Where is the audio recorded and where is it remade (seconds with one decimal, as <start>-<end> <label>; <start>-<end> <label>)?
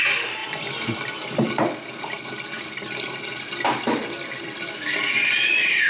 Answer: 0.0-0.4 recorded; 0.4-1.5 remade; 1.5-5.9 recorded